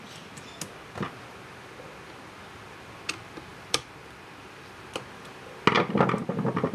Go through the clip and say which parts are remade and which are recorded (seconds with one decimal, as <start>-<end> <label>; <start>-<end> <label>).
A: 0.0-3.5 recorded; 3.5-4.3 remade; 4.3-6.7 recorded